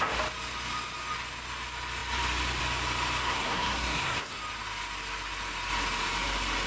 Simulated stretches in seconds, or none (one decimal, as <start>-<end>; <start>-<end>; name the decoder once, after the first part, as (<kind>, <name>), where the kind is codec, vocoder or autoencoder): 3.2-4.4 (codec, SNAC)